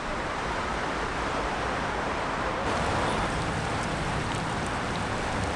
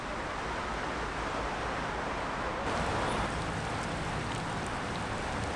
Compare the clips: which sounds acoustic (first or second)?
second